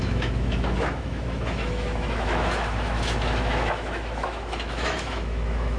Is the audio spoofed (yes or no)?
yes